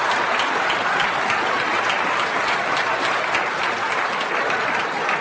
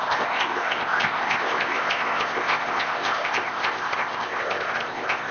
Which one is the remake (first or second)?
second